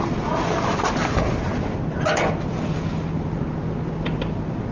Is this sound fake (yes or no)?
no